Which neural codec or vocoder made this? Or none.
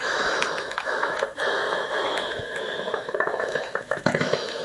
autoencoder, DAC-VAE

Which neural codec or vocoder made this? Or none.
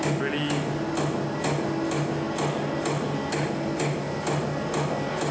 none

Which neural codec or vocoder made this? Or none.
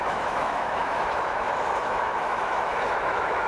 autoencoder, DAC-VAE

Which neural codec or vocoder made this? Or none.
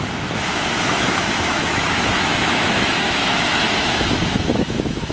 autoencoder, DAC-VAE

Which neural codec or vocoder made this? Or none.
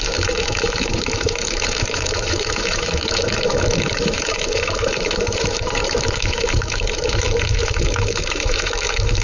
autoencoder, DAC-VAE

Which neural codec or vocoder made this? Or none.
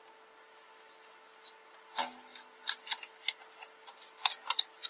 none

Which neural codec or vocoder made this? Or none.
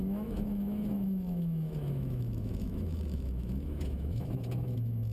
autoencoder, DAC-VAE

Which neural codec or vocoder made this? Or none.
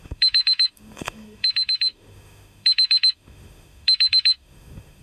autoencoder, DAC-VAE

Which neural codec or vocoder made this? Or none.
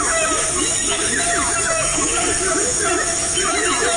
autoencoder, DAC-VAE